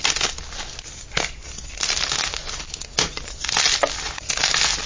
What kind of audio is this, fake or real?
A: real